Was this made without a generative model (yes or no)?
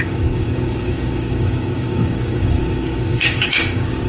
no